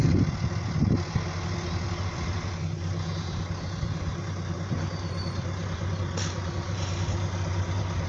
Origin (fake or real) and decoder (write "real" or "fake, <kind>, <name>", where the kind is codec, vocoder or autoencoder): real